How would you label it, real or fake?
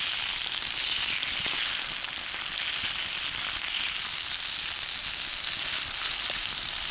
real